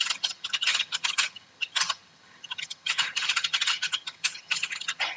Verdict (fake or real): fake